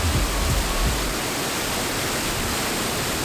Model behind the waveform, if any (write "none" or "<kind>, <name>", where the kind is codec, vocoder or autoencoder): none